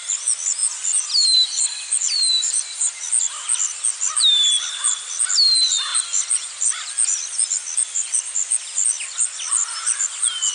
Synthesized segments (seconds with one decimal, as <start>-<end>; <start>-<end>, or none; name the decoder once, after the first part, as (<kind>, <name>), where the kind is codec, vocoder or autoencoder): 0.6-2.9 (vocoder, BigVGAN v2)